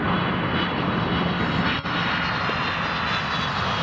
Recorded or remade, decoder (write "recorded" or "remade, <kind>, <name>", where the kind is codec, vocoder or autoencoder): recorded